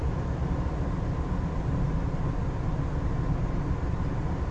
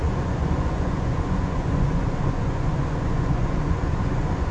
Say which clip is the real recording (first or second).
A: first